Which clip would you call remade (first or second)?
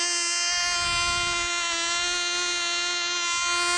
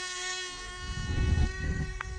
second